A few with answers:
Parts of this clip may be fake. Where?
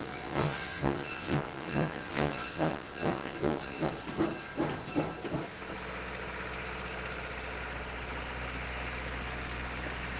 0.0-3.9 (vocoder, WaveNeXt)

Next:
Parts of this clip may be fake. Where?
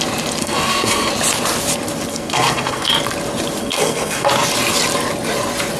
0.4-1.1 (codec, SNAC); 2.1-2.9; 3.6-4.3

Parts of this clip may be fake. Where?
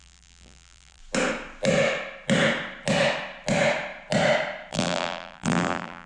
0.0-1.0 (vocoder, BigVGAN v2); 4.7-6.1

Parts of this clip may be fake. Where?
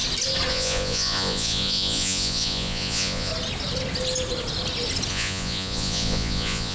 0.5-3.3 (vocoder, Vocos); 5.1-6.7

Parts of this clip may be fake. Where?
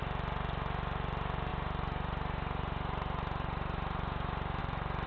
1.5-4.6 (vocoder, BigVGAN v2)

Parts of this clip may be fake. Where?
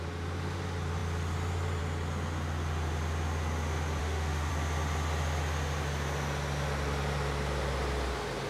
4.0-4.5 (autoencoder, DAC-VAE)